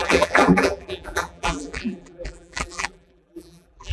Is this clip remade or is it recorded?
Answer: remade